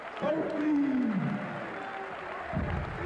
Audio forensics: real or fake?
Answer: real